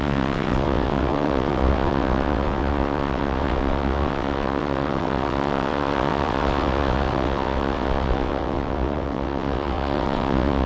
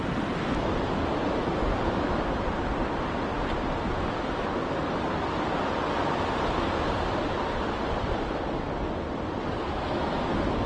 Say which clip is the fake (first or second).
first